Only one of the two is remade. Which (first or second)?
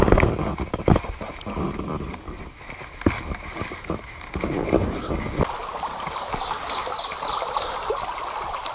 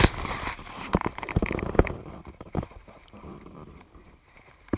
second